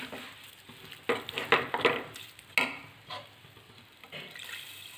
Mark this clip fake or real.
real